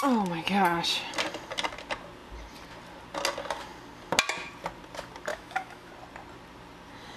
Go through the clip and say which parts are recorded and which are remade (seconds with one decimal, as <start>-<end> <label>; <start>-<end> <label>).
0.0-5.3 recorded; 5.3-5.9 remade; 5.9-7.2 recorded

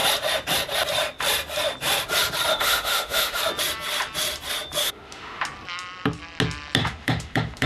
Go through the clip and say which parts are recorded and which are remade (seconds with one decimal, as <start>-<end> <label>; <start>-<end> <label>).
0.0-2.5 recorded; 2.5-3.4 remade; 3.4-4.8 recorded; 4.8-5.4 remade; 5.4-6.8 recorded; 6.8-7.7 remade

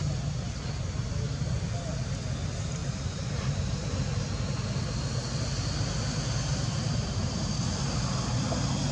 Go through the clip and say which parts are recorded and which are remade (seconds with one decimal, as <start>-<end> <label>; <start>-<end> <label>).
0.0-2.8 recorded; 2.8-4.0 remade; 4.0-6.5 recorded; 6.5-7.5 remade; 7.5-8.9 recorded

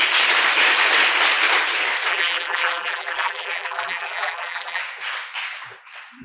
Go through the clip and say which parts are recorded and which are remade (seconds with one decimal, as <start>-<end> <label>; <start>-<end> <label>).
0.0-2.1 recorded; 2.1-4.8 remade; 4.8-6.2 recorded

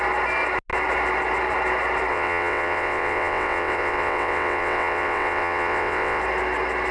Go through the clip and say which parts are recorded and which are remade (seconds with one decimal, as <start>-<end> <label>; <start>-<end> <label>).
0.0-2.1 recorded; 2.1-6.2 remade; 6.2-6.9 recorded